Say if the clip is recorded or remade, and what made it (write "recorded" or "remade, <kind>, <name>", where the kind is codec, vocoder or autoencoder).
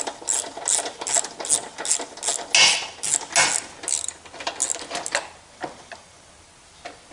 recorded